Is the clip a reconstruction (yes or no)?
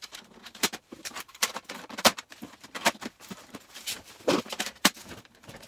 yes